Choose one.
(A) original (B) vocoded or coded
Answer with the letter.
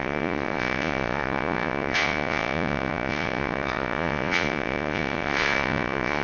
B